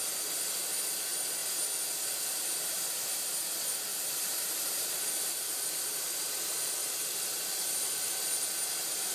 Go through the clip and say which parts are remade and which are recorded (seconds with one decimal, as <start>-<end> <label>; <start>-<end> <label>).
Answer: 0.0-3.9 recorded; 3.9-6.1 remade; 6.1-6.8 recorded; 6.8-8.1 remade; 8.1-9.1 recorded